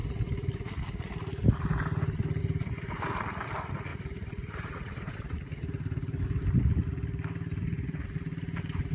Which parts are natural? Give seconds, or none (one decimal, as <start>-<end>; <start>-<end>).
0.0-3.9; 6.5-8.9